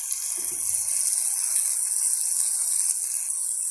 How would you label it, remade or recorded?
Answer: recorded